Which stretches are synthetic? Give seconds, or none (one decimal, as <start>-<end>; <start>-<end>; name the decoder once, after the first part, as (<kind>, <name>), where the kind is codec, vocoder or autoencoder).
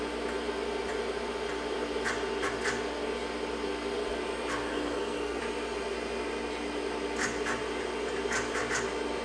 4.7-5.4 (codec, SNAC)